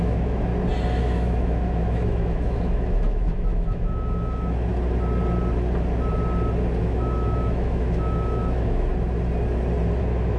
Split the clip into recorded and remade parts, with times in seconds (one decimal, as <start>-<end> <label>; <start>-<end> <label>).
0.0-0.5 remade; 0.5-1.0 recorded; 1.0-4.7 remade; 4.7-6.8 recorded; 6.8-8.9 remade; 8.9-10.0 recorded; 10.0-10.4 remade